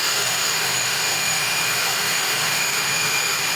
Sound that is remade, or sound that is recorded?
remade